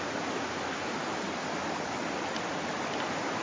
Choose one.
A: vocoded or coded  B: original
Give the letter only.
B